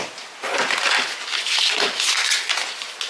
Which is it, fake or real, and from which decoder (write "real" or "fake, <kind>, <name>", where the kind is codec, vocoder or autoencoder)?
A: real